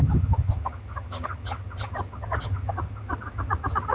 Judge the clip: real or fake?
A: fake